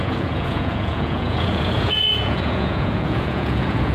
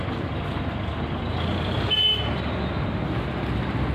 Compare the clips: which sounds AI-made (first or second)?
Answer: first